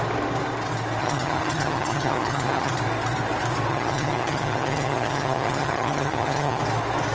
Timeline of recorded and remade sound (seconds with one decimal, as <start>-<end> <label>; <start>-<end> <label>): 0.0-1.0 recorded; 1.0-2.7 remade; 2.7-3.7 recorded; 3.7-6.6 remade; 6.6-7.1 recorded